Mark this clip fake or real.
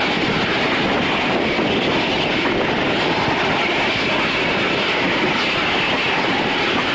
real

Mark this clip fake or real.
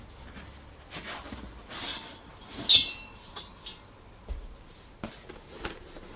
real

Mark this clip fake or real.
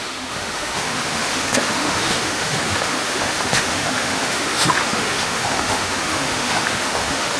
fake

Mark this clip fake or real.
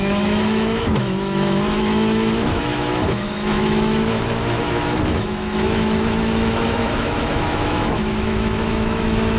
fake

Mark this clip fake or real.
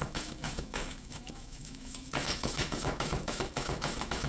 fake